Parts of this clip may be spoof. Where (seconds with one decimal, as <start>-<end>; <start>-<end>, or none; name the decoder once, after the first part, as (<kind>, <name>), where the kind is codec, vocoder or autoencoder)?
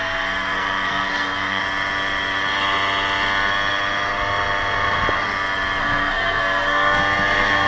0.0-1.6 (codec, SNAC); 5.8-7.7